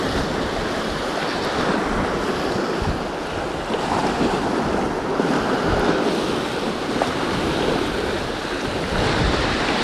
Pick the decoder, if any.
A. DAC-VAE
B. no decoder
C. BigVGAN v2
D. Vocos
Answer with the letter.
B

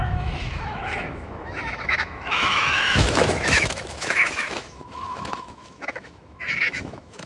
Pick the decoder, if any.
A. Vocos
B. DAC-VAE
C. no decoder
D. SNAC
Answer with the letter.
B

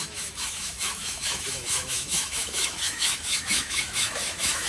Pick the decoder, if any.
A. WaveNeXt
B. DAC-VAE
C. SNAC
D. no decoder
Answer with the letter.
B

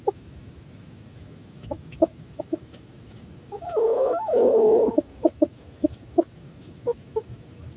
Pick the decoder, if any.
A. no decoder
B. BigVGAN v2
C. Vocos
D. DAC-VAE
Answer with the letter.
D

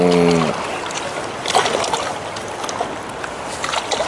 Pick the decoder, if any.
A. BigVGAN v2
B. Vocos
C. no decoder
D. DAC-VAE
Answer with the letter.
C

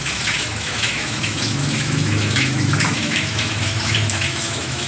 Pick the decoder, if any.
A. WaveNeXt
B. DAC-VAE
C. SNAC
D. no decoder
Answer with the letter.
B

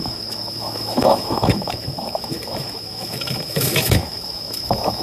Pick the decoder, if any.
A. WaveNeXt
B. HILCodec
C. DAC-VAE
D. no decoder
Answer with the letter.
C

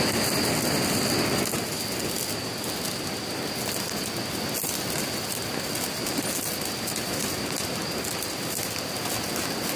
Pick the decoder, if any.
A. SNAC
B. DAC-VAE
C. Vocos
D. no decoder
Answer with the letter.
D